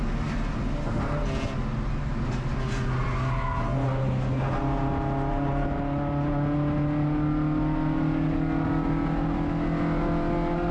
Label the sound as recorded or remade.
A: recorded